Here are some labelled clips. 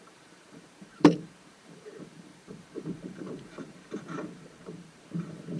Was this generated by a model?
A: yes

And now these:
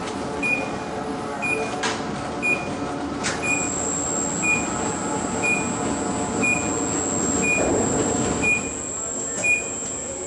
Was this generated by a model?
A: no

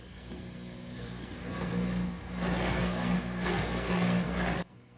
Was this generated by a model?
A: yes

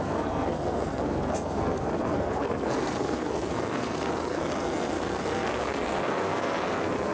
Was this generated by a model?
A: yes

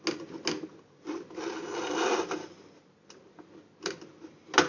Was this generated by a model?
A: no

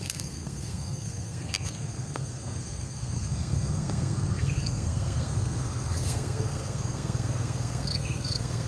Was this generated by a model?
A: yes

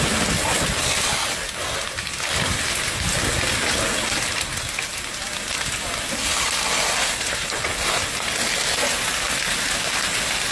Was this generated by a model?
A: no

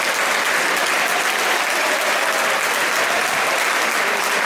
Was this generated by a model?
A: no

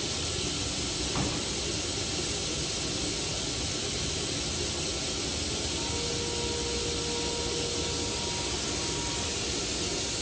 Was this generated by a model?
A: no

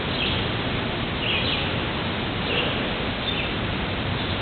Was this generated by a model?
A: no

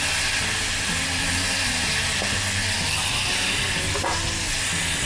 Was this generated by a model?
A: no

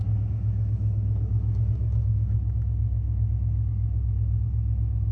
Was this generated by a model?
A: yes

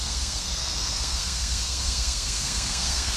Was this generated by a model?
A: yes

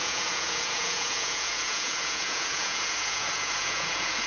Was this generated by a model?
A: yes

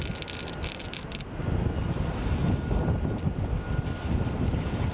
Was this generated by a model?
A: no